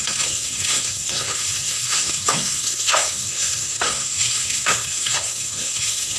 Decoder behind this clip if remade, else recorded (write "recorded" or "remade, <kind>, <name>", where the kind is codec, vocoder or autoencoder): remade, codec, SNAC